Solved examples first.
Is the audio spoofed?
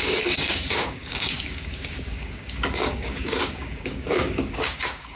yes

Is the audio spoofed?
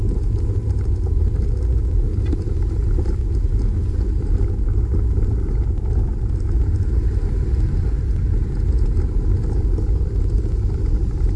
no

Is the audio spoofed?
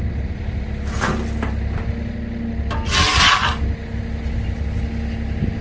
no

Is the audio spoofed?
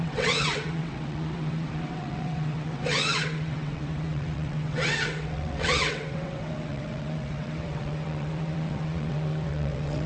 yes